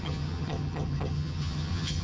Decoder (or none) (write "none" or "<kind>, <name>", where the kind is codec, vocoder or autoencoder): vocoder, HiFi-GAN